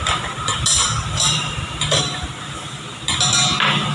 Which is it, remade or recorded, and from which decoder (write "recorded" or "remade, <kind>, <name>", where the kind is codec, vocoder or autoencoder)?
recorded